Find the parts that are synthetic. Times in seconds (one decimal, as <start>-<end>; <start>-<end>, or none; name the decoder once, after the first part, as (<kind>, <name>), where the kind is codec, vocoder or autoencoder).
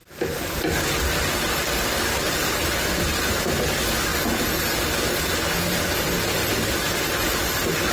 none